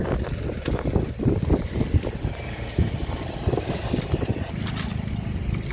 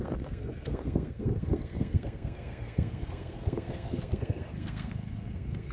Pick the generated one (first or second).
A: second